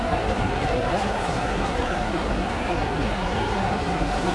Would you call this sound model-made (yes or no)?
yes